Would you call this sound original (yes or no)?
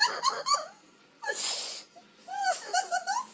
no